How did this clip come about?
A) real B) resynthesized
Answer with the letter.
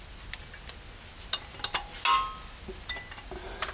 A